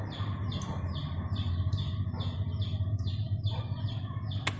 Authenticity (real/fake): real